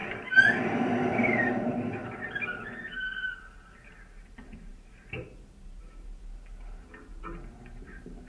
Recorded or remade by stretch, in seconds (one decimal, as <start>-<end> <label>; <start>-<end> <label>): 0.0-7.1 remade; 7.1-8.3 recorded